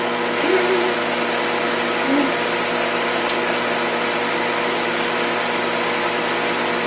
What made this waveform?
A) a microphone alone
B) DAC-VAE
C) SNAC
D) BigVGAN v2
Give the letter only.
A